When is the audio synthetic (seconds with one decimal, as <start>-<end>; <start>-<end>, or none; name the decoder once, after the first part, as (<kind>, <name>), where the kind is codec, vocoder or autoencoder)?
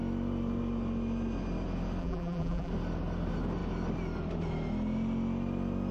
2.0-2.7 (vocoder, BigVGAN v2)